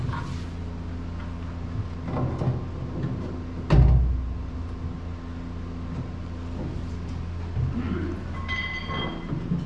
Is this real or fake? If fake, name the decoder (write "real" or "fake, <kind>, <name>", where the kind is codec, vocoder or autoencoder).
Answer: real